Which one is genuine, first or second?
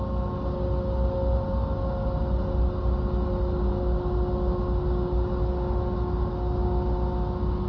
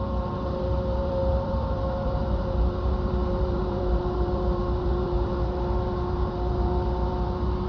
first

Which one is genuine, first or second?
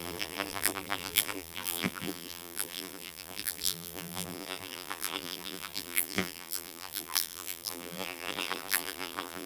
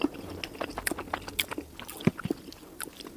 second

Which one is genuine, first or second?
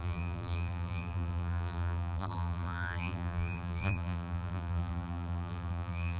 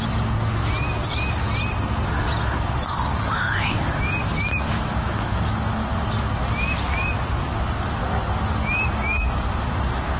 second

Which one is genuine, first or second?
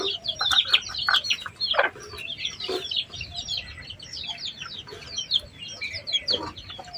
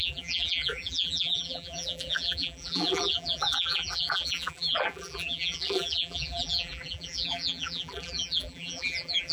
first